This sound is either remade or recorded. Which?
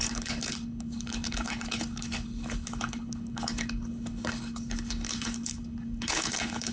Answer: remade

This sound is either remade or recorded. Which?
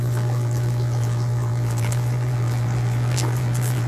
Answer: remade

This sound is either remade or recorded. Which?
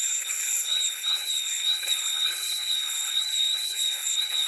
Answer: remade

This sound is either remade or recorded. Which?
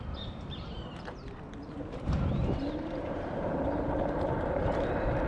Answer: remade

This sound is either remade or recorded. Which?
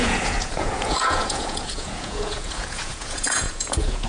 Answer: remade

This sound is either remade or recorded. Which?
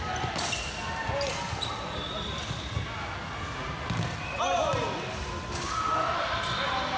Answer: recorded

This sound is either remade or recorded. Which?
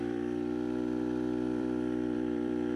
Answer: remade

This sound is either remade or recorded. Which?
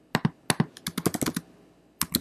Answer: recorded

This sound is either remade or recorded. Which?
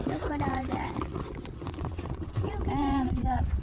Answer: remade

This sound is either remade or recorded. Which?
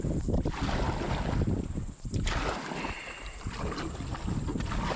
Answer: recorded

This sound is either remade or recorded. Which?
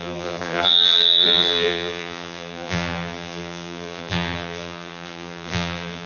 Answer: remade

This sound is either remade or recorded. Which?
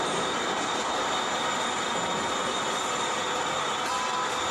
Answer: recorded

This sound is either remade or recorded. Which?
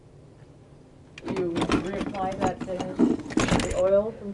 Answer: recorded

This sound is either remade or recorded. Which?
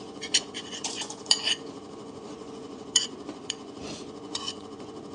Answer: remade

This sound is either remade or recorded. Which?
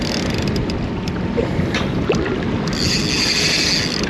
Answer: recorded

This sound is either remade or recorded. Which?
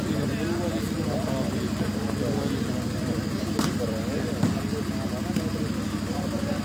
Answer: recorded